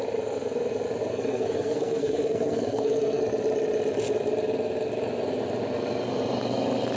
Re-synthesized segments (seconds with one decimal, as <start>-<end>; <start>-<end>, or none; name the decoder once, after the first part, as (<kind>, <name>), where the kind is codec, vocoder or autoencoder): 1.1-3.2 (codec, SNAC)